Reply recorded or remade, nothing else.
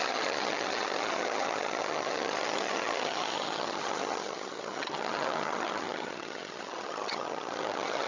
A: remade